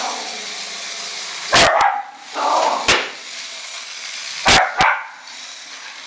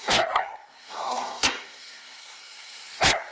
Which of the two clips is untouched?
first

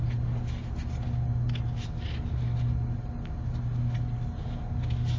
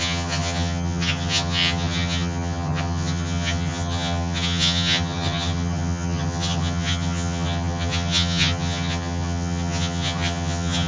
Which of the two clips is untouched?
first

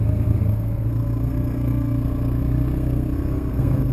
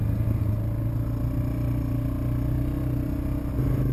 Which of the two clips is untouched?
second